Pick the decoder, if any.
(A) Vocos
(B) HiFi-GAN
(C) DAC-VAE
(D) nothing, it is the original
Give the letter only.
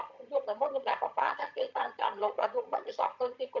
B